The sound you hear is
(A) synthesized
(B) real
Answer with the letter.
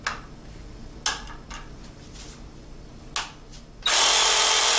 B